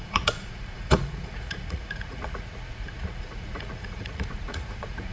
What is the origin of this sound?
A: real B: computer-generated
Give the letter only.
B